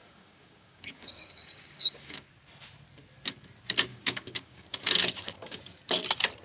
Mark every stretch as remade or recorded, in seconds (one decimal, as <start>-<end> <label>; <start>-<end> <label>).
0.0-2.3 remade; 2.3-3.9 recorded; 3.9-5.6 remade; 5.6-6.4 recorded